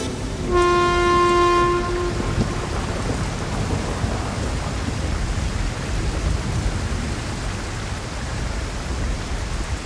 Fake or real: real